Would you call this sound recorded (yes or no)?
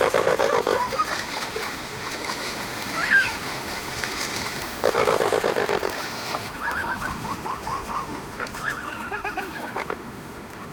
no